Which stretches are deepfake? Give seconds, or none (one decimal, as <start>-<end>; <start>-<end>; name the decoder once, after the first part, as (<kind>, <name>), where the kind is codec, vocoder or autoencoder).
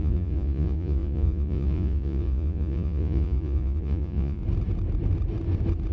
0.0-4.4 (vocoder, Vocos)